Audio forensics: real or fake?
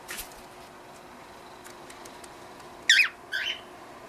real